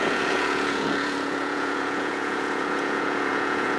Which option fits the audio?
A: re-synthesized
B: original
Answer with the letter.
A